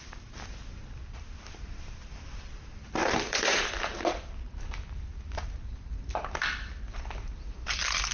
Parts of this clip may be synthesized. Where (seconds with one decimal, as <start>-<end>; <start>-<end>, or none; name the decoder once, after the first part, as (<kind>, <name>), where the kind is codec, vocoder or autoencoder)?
0.0-8.1 (vocoder, BigVGAN v2)